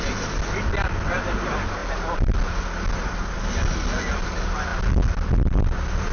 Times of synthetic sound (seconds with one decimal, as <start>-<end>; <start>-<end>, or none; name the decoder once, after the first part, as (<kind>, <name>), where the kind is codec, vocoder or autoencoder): none

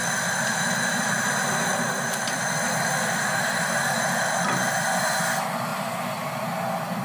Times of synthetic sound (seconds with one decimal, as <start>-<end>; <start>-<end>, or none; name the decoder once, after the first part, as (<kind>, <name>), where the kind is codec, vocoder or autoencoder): 0.0-4.2 (vocoder, BigVGAN v2); 5.7-6.3

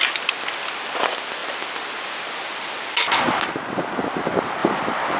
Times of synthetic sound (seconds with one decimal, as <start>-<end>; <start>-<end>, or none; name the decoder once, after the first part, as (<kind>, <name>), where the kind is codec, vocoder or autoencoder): none